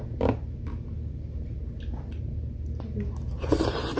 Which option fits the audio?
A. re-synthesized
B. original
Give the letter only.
B